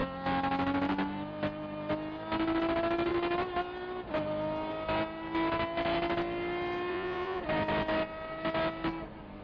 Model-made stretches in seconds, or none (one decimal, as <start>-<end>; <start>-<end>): 6.9-7.4